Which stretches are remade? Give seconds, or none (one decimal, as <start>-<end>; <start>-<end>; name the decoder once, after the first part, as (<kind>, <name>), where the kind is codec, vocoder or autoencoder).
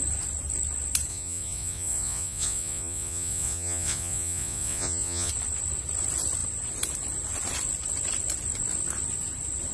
1.1-5.3 (vocoder, Vocos)